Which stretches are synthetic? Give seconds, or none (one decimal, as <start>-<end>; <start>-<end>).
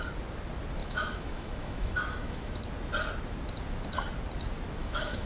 0.8-2.6; 4.8-5.3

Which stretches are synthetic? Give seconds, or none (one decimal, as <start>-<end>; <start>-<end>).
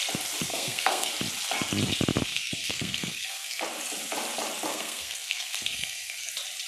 0.5-1.1; 2.3-3.6; 4.7-6.3